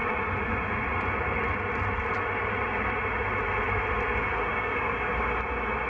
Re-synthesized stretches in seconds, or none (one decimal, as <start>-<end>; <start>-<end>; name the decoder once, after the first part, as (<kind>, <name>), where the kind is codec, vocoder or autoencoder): 4.5-5.1 (codec, DAC)